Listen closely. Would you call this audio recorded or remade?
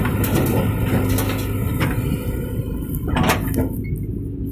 recorded